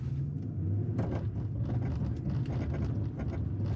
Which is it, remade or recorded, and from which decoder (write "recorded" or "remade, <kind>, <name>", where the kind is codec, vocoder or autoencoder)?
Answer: recorded